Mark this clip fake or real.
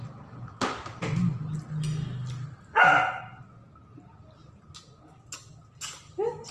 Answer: real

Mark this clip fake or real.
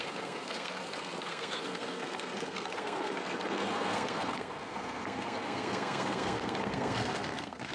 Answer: fake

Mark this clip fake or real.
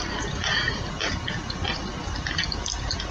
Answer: real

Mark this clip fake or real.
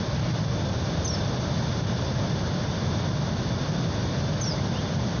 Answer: real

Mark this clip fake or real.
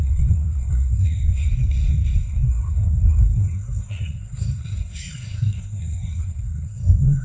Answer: fake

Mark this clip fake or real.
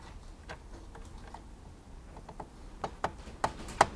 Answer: real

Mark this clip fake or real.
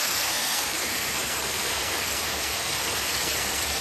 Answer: fake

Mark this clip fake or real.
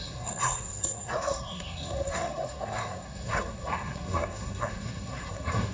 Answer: fake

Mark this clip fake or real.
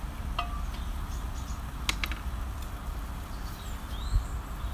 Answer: real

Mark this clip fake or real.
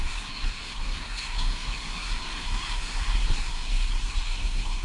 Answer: fake